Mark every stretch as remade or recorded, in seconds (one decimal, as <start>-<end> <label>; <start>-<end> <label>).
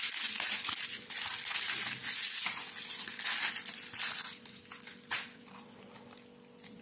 0.0-6.8 recorded